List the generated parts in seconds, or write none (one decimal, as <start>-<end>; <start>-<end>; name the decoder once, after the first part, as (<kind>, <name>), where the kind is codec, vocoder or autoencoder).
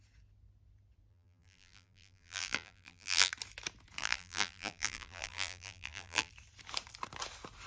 1.1-3.3 (vocoder, BigVGAN v2); 4.0-6.3